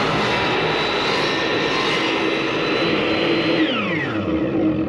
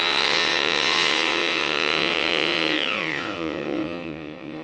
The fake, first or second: second